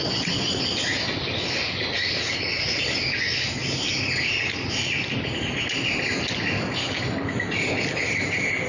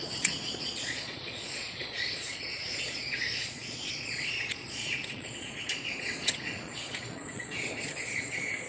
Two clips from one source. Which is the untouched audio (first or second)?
first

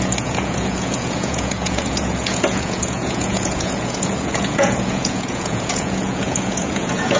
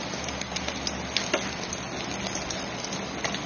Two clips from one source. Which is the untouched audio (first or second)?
second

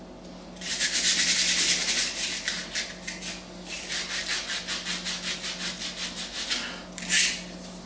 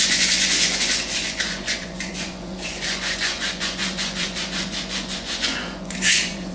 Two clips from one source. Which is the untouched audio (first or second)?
first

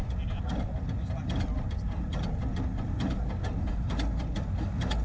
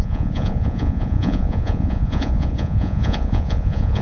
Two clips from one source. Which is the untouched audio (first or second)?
first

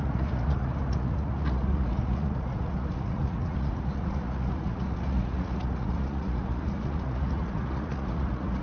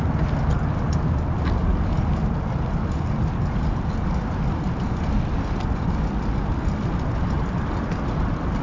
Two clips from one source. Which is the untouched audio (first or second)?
second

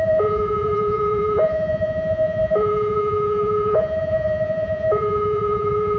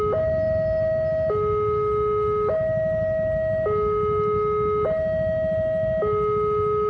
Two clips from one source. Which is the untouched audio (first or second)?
second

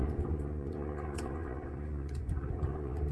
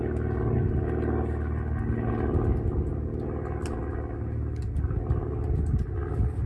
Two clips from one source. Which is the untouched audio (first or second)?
second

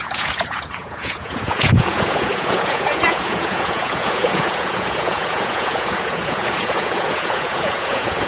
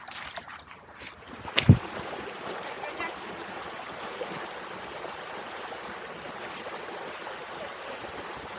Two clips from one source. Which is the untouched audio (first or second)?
second